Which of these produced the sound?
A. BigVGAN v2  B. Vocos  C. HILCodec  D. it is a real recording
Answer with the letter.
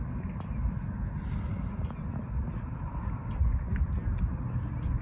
D